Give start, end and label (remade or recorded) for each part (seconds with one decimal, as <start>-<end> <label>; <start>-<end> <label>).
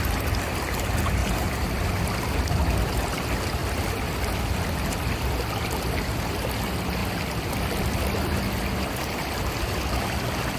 0.0-1.2 recorded; 1.2-2.0 remade; 2.0-10.6 recorded